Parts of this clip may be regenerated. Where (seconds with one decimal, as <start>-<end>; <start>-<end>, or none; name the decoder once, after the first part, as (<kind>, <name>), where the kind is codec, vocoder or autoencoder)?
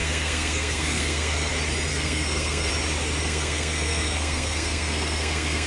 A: 0.0-1.5 (codec, SNAC); 1.9-2.7; 3.2-5.7